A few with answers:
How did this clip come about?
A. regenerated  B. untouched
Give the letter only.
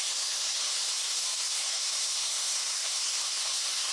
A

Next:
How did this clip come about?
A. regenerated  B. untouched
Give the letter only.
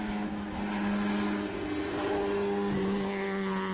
B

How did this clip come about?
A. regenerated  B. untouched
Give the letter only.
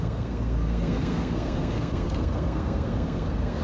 A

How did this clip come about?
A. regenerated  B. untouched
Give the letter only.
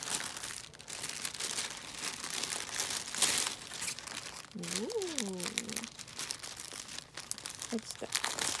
B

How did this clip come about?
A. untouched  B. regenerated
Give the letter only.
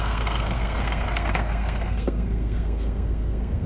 B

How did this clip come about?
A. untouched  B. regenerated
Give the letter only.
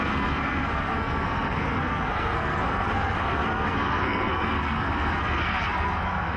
B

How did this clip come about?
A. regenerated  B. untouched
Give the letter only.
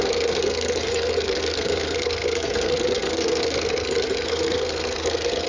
A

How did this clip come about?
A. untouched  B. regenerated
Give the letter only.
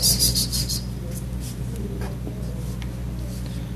A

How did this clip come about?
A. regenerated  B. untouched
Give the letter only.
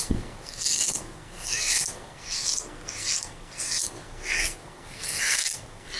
A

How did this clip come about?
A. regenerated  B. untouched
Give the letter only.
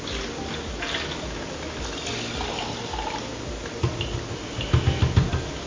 B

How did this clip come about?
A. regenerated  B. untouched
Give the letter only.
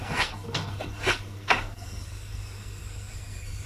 A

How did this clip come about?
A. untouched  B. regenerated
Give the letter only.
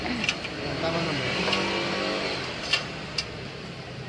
A